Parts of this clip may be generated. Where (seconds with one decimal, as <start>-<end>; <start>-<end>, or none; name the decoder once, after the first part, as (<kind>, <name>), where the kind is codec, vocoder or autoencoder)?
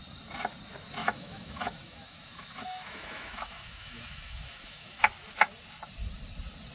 1.0-5.0 (autoencoder, DAC-VAE)